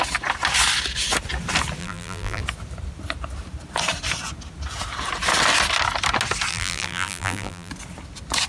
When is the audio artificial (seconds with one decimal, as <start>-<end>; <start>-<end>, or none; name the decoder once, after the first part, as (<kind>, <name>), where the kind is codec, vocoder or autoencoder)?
1.8-2.4 (vocoder, BigVGAN v2); 6.5-7.7